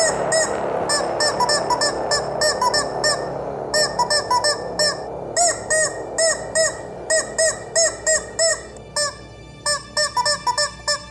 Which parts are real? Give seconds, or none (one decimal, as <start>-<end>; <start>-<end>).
0.0-11.1